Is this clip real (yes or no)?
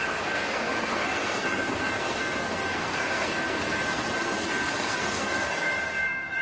no